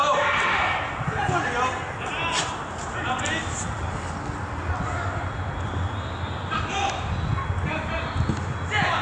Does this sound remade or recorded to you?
recorded